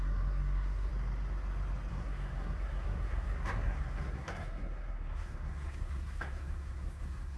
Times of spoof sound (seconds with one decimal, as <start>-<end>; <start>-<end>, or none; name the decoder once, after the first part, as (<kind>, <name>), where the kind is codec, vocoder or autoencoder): 0.0-0.9 (codec, SNAC); 1.9-7.4